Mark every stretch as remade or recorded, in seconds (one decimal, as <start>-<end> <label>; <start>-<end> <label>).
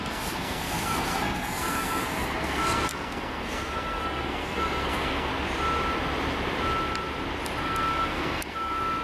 0.0-5.3 remade; 5.3-7.6 recorded; 7.6-9.0 remade